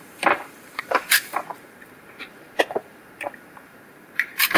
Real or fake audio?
fake